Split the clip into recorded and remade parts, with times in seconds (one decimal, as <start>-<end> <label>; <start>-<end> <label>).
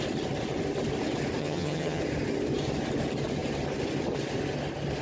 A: 0.0-1.4 recorded; 1.4-2.0 remade; 2.0-5.0 recorded